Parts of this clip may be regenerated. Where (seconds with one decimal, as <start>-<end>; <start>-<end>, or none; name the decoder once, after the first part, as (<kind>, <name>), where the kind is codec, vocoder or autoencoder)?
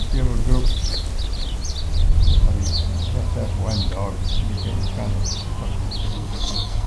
6.0-6.9 (codec, SNAC)